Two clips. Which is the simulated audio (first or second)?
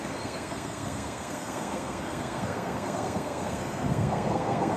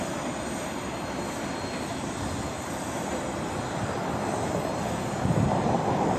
first